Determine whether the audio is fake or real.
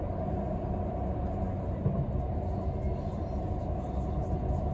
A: real